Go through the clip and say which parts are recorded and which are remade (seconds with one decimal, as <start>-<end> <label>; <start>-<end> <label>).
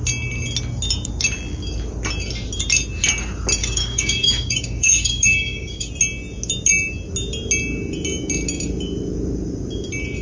0.0-3.6 recorded; 3.6-5.9 remade; 5.9-10.2 recorded